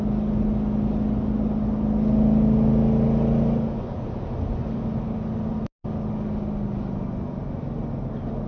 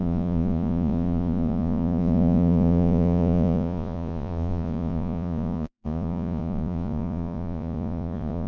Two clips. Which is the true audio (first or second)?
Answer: first